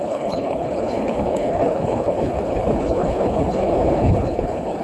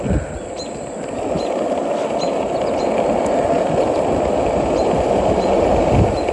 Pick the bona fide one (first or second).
second